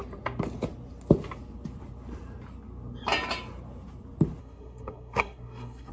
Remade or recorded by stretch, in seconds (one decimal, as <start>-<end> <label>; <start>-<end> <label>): 0.0-4.4 recorded; 4.4-5.9 remade